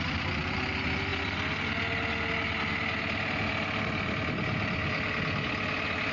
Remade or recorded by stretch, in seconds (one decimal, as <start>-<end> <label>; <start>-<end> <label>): 0.0-6.1 recorded